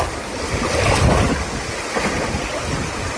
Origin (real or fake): real